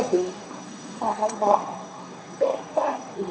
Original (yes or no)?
no